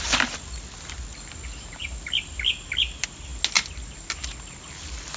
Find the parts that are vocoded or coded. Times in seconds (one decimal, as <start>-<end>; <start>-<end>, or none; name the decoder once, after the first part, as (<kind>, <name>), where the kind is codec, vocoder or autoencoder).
none